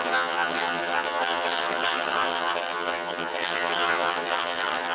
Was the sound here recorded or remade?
remade